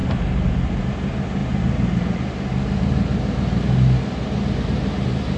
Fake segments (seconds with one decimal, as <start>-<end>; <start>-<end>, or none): 0.0-1.4; 4.6-5.4

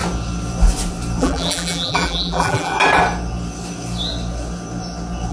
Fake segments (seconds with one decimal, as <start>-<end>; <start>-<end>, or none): 1.2-2.7